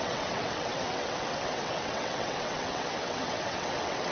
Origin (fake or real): fake